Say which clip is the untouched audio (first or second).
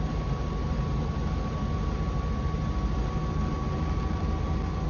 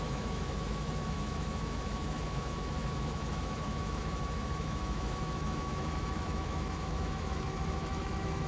first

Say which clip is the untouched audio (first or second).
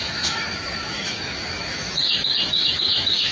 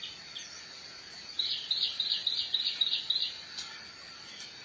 second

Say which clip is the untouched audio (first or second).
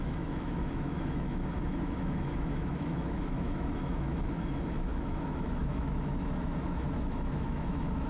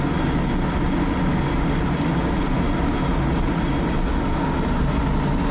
second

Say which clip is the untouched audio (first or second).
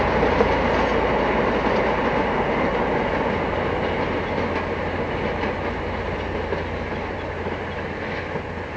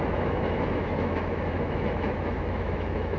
first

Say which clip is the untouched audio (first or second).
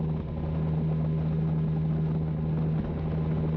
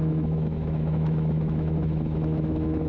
first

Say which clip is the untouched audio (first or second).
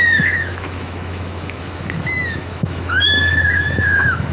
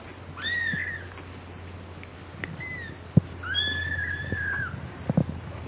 second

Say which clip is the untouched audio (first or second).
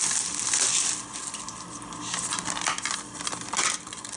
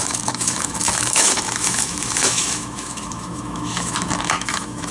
first